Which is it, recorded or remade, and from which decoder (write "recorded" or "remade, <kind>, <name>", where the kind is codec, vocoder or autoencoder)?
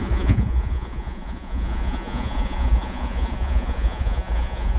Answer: remade, vocoder, Vocos